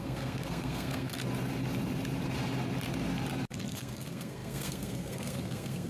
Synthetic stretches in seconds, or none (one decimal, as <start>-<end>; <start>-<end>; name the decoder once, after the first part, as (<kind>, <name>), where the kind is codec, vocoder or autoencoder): 0.0-1.1 (codec, SNAC); 3.7-5.9